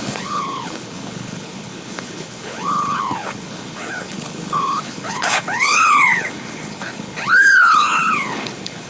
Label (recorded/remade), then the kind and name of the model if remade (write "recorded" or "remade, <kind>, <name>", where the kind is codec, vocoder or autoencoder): remade, codec, HILCodec